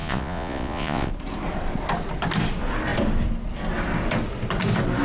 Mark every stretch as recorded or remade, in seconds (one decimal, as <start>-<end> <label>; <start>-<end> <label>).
0.0-1.1 remade; 1.1-5.0 recorded